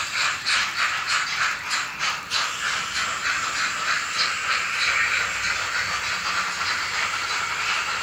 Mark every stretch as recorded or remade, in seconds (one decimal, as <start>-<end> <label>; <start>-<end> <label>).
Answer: 0.0-8.0 recorded